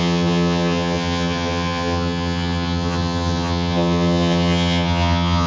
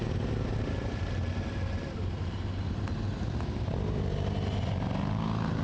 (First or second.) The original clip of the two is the second